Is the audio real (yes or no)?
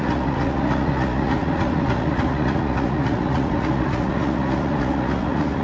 no